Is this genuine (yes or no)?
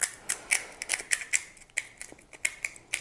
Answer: yes